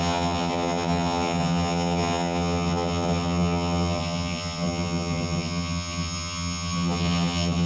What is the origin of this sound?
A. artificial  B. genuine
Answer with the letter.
A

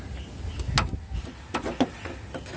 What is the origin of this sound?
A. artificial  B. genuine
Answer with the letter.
B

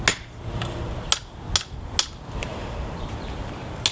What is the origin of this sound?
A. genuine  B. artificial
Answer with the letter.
A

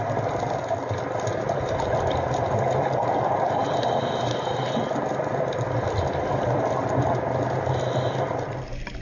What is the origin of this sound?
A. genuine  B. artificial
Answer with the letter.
A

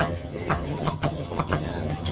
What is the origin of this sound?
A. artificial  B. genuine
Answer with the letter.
A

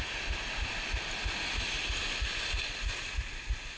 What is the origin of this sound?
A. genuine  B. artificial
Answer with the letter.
A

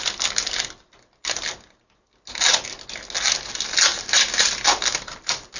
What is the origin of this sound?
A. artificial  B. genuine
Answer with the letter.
B